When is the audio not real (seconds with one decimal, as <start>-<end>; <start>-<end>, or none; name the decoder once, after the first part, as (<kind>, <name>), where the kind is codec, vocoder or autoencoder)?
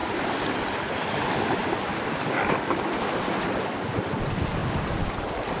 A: 0.0-3.3 (vocoder, BigVGAN v2)